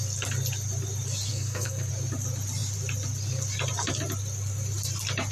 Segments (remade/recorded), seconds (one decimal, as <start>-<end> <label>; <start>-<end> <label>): 0.0-1.3 recorded; 1.3-1.9 remade; 1.9-5.3 recorded